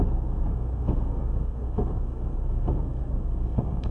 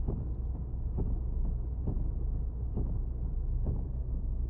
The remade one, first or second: first